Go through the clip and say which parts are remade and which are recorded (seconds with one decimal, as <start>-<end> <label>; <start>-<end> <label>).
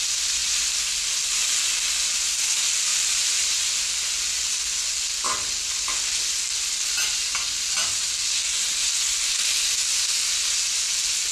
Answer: 0.0-0.4 recorded; 0.4-0.9 remade; 0.9-2.9 recorded; 2.9-3.6 remade; 3.6-11.3 recorded